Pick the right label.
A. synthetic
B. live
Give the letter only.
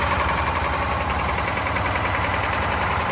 A